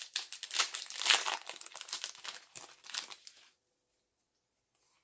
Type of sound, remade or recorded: recorded